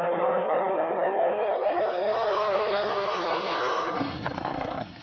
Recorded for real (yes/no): no